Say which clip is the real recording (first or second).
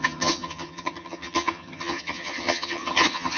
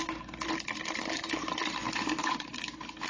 second